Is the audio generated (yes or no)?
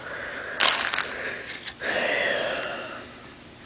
no